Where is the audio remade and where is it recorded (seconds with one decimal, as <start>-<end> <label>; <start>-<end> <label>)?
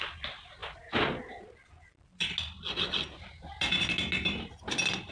0.0-5.1 recorded